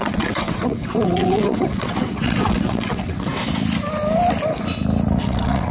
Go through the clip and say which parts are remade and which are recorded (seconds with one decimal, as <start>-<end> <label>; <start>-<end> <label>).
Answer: 0.0-3.3 remade; 3.3-5.2 recorded; 5.2-5.7 remade